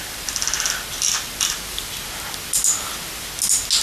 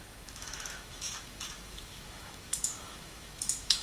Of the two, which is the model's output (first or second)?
second